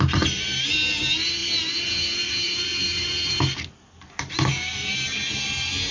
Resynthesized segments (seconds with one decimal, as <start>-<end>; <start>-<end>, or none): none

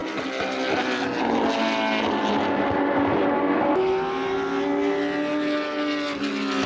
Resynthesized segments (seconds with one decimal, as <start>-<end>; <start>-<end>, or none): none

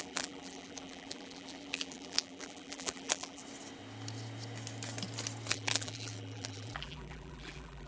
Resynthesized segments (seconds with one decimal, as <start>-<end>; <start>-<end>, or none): 0.0-3.4; 5.5-7.9

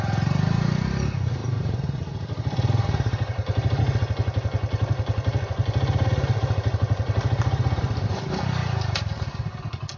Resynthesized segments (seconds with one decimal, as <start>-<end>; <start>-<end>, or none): 1.4-3.8; 6.0-7.8; 8.6-9.6

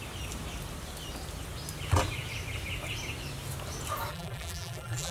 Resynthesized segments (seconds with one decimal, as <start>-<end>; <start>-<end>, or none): 4.1-5.1

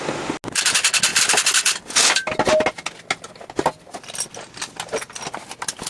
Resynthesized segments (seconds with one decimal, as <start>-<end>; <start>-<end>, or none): 1.1-1.9

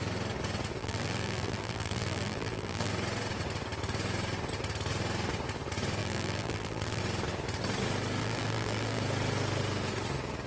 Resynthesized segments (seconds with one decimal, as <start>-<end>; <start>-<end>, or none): 0.8-2.9; 6.0-7.0; 8.2-9.0

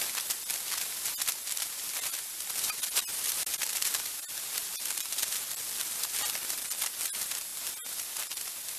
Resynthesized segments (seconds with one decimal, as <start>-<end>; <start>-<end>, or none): 3.5-6.3